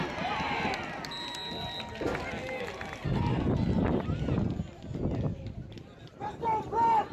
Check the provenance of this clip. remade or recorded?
recorded